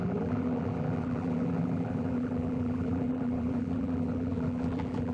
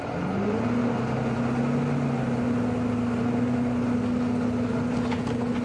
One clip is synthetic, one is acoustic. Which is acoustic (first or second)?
second